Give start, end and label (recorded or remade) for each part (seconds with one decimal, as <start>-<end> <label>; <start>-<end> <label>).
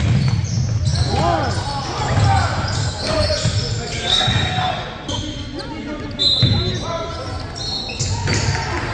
0.0-2.8 recorded; 2.8-3.3 remade; 3.3-4.0 recorded; 4.0-4.7 remade; 4.7-8.9 recorded